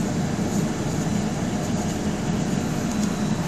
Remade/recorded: recorded